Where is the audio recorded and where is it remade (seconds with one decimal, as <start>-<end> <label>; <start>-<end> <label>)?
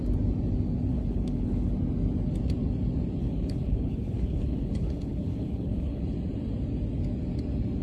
0.0-0.9 recorded; 0.9-1.7 remade; 1.7-3.2 recorded; 3.2-6.0 remade; 6.0-7.8 recorded